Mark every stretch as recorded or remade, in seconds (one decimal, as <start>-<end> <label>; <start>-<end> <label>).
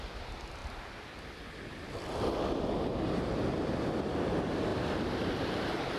0.0-6.0 recorded